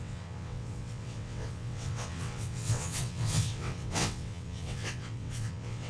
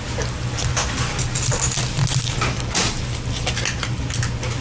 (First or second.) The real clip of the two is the second